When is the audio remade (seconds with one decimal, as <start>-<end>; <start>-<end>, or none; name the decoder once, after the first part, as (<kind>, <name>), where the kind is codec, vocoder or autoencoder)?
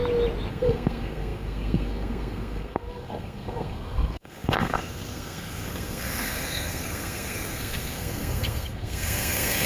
0.5-9.7 (codec, SNAC)